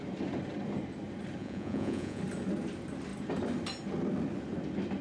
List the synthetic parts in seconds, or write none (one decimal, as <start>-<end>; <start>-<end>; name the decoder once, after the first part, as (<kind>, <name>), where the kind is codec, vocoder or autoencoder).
1.4-2.2 (vocoder, Vocos)